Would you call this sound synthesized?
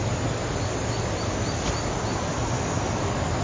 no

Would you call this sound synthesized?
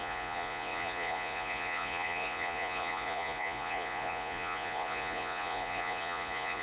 yes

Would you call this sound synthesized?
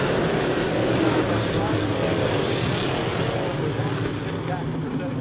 no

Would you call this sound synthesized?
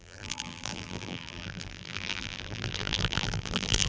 yes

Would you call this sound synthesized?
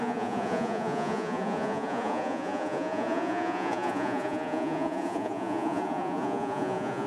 yes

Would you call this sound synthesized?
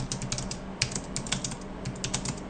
no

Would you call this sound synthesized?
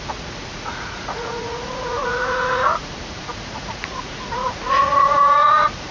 yes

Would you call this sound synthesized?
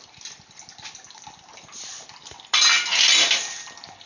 no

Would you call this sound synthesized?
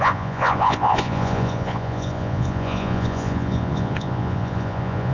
yes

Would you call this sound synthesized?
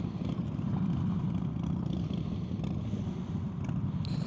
no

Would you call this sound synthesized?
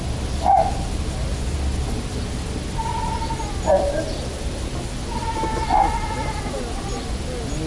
no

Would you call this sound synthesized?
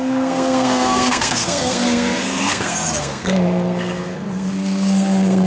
yes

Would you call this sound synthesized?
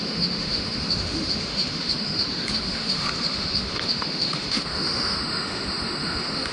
yes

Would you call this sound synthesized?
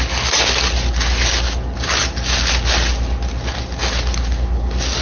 no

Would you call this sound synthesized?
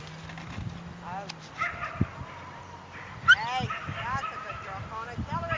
no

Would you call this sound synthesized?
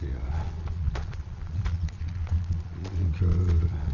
yes